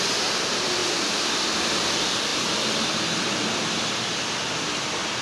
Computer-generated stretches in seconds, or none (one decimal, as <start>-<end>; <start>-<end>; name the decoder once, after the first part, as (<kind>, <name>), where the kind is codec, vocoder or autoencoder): 0.8-1.6 (vocoder, BigVGAN v2)